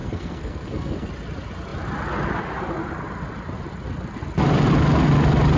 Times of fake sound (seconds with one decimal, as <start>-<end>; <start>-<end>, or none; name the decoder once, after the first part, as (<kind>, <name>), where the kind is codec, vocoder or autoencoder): 0.0-1.1 (codec, SNAC)